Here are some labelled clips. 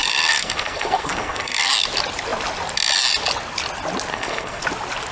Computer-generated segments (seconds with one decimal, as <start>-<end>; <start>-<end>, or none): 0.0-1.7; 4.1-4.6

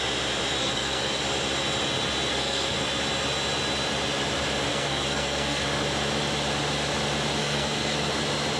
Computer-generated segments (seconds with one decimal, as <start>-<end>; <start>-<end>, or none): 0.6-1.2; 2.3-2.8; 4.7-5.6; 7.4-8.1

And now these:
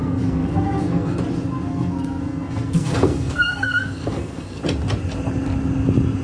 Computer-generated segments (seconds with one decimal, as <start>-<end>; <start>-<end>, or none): 0.0-1.2; 1.7-4.6